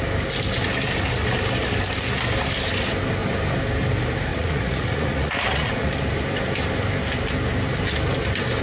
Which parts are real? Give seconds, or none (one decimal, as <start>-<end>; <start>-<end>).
0.0-4.3; 5.9-8.6

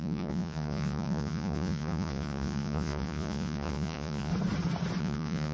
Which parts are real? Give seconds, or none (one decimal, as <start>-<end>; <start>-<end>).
4.3-5.0

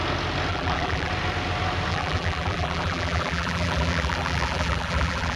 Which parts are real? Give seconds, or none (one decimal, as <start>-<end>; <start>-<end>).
0.0-0.5; 1.1-1.9